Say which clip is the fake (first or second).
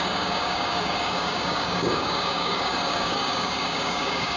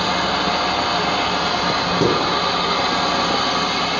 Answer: first